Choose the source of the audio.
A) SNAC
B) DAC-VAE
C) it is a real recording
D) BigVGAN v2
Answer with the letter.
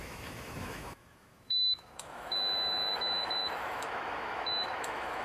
B